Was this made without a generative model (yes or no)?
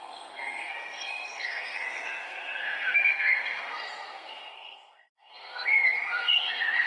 no